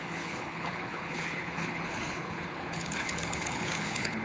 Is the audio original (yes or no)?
no